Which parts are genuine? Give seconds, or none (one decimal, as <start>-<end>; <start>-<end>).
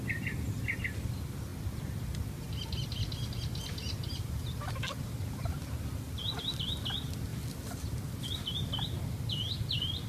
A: 0.0-10.1